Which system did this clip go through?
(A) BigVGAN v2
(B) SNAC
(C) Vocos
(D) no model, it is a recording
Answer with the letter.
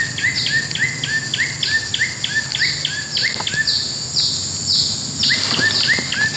D